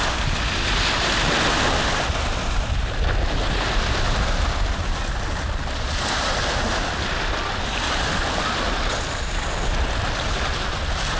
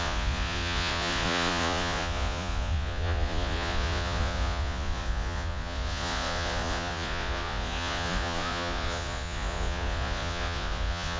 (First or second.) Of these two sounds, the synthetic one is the second